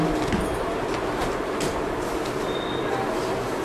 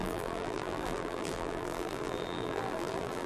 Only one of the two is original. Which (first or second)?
first